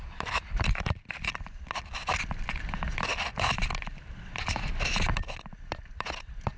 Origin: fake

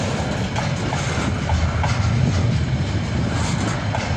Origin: real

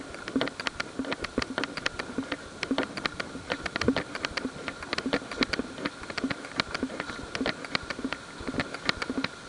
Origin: real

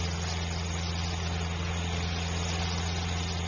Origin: real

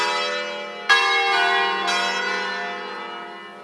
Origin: real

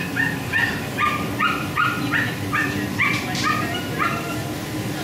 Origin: fake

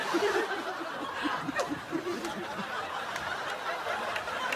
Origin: real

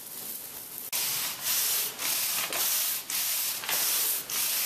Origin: real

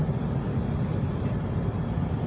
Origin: fake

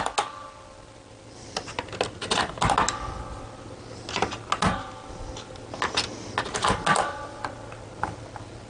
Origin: real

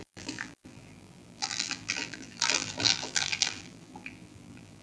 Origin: fake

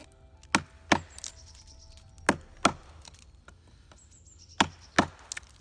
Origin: real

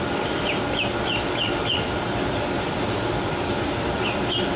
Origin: real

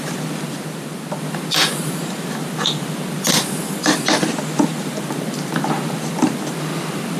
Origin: fake